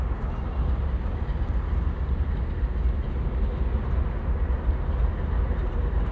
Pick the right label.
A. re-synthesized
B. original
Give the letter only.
B